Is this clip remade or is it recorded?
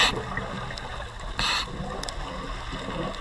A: recorded